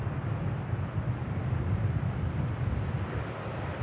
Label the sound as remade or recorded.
recorded